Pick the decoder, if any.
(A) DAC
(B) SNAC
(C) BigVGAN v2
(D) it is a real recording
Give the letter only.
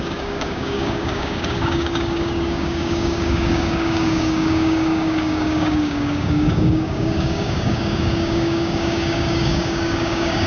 A